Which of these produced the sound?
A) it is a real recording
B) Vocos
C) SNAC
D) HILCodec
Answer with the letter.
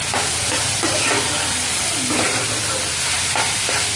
A